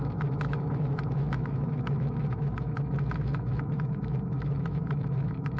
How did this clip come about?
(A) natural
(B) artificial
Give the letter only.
B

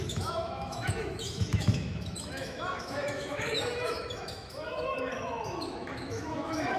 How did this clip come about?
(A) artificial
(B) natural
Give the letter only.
A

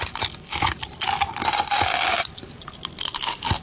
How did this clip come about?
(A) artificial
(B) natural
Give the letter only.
B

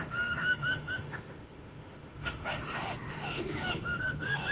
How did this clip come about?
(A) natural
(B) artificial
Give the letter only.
B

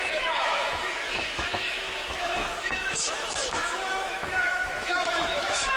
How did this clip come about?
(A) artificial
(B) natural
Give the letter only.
A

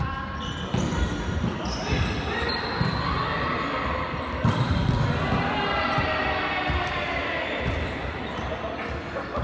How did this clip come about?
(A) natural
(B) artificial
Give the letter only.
A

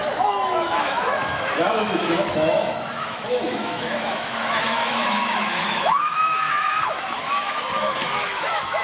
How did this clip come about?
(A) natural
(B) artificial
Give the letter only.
B